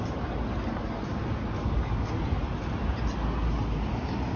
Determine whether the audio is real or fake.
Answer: real